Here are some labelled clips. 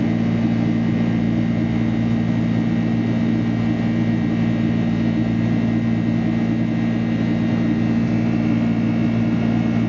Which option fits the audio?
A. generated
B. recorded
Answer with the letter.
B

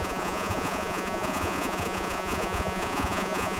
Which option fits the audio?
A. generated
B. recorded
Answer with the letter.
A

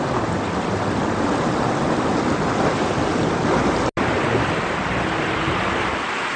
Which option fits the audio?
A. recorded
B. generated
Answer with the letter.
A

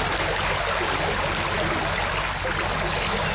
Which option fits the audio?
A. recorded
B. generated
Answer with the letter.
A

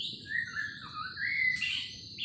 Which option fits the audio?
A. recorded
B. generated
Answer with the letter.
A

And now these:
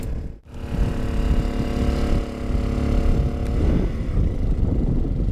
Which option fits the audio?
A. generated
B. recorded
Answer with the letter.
B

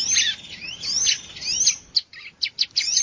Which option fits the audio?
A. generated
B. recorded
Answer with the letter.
B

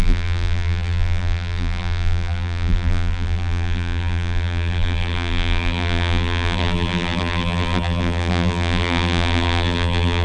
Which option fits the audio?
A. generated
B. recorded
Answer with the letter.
A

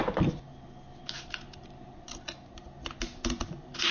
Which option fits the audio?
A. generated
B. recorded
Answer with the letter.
B